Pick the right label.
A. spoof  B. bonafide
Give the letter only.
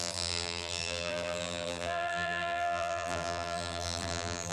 A